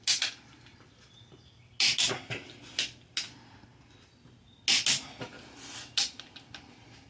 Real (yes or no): yes